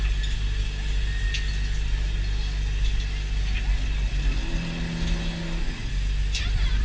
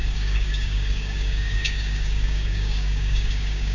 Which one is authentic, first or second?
first